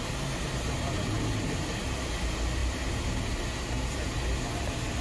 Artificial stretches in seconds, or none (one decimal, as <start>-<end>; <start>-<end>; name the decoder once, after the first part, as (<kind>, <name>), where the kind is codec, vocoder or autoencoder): none